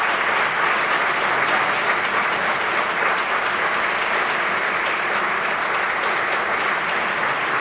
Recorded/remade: recorded